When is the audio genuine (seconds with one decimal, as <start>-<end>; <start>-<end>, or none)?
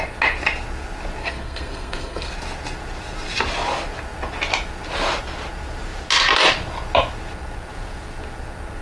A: 0.0-1.2; 2.3-8.8